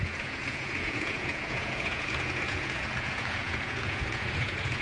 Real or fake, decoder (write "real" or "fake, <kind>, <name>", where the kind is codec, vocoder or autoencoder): fake, vocoder, Vocos